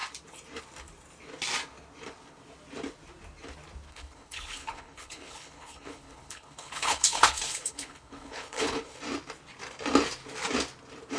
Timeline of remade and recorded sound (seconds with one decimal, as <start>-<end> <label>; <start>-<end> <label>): 0.0-3.9 recorded; 3.9-9.0 remade; 9.0-11.2 recorded